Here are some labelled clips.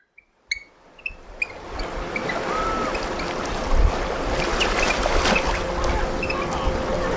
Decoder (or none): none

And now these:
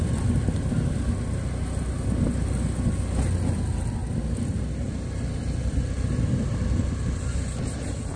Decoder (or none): none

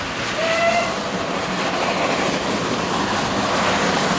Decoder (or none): none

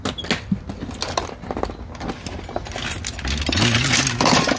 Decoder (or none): none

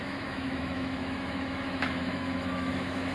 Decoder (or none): autoencoder, DAC-VAE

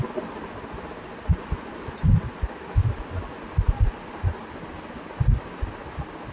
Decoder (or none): none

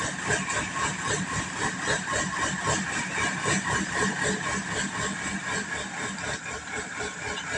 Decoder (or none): none